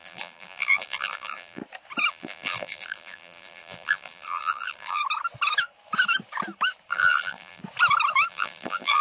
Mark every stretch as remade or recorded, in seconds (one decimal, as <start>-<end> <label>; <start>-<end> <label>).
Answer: 0.0-1.6 remade; 1.6-2.1 recorded; 2.1-5.0 remade; 5.0-6.9 recorded; 6.9-7.6 remade; 7.6-8.3 recorded; 8.3-9.0 remade